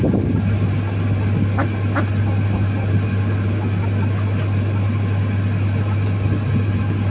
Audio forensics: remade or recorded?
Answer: recorded